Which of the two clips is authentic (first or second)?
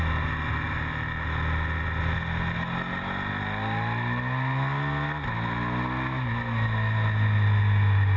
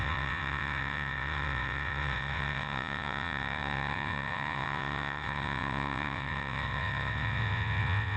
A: first